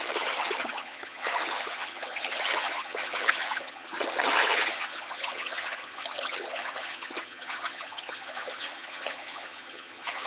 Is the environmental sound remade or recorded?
remade